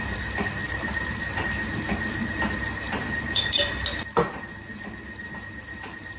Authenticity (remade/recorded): recorded